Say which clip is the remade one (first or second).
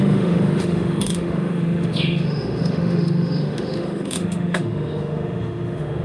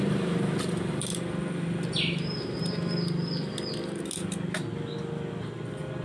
first